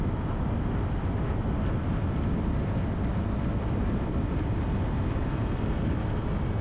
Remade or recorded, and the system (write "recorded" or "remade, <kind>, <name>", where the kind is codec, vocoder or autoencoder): recorded